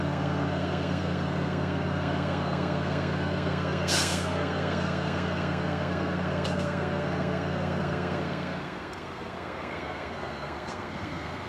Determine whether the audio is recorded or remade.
remade